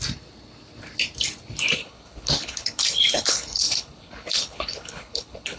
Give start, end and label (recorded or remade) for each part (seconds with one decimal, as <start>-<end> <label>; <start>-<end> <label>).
0.0-1.8 recorded; 1.8-5.6 remade